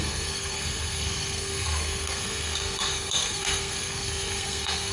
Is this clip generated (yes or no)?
yes